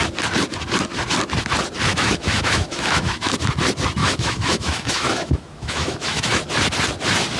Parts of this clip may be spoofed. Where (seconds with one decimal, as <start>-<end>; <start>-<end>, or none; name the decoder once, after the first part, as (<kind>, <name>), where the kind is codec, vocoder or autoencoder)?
1.9-3.3 (autoencoder, DAC-VAE); 4.0-6.4